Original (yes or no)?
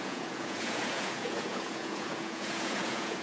no